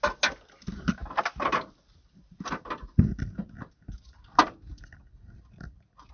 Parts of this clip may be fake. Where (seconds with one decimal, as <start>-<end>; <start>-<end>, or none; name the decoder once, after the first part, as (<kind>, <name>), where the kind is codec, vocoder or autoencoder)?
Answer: none